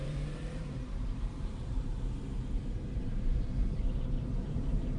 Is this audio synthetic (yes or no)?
yes